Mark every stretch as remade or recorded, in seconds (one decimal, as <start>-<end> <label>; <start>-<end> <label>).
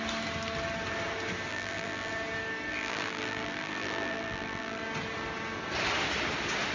0.0-1.5 recorded; 1.5-2.1 remade; 2.1-2.7 recorded; 2.7-4.8 remade; 4.8-6.7 recorded